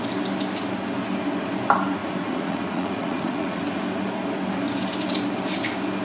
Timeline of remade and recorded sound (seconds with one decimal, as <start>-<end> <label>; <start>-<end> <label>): 0.0-2.0 recorded; 2.0-3.6 remade; 3.6-6.0 recorded